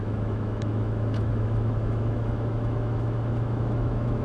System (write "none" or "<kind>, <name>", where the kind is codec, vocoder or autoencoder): autoencoder, DAC-VAE